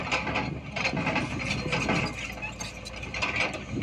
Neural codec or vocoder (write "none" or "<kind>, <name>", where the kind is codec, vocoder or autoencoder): none